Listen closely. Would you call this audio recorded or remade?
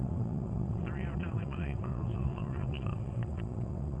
remade